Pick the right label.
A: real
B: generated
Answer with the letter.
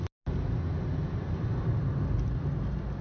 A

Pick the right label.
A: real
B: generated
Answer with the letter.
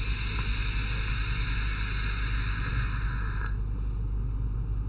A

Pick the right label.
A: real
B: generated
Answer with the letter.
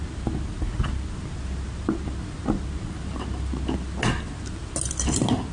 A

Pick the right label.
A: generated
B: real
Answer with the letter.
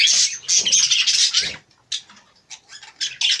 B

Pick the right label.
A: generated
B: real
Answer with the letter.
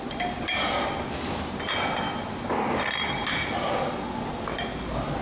B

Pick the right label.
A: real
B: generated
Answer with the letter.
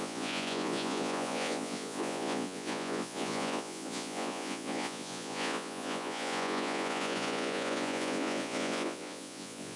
B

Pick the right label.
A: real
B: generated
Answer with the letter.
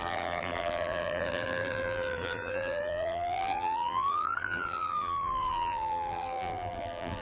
B